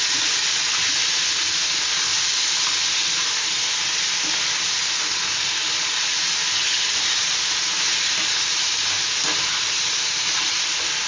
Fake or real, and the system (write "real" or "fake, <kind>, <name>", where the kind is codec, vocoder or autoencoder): real